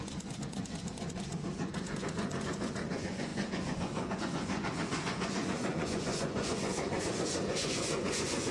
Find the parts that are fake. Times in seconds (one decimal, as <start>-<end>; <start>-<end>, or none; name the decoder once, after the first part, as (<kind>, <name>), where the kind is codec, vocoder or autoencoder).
0.0-8.5 (vocoder, Vocos)